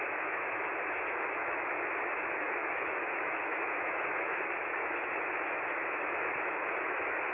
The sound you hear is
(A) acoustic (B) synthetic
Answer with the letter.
B